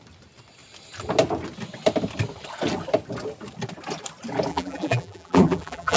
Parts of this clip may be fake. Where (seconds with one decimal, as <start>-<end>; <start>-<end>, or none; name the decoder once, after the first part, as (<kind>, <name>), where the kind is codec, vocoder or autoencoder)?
4.5-6.0 (vocoder, BigVGAN v2)